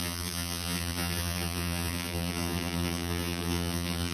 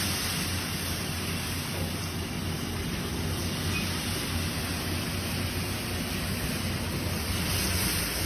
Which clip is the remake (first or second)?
first